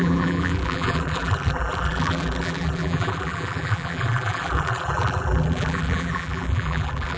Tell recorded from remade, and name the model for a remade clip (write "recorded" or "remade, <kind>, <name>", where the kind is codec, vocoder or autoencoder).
remade, vocoder, BigVGAN v2